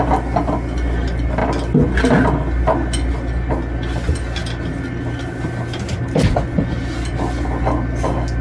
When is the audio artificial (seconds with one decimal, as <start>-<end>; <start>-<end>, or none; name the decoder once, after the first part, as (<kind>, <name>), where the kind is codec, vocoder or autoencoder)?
none